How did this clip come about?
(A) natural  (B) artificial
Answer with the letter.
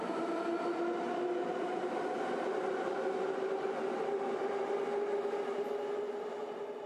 A